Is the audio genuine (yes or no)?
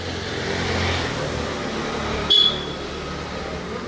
yes